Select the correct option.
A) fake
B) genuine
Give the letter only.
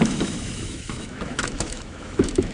A